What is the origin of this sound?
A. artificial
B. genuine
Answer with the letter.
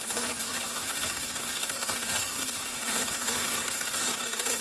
A